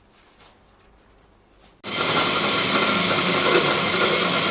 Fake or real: real